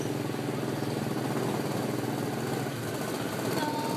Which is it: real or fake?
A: real